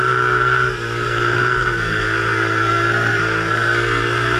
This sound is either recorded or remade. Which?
remade